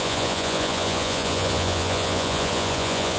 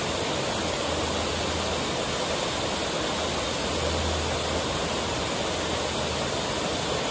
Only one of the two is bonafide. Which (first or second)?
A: second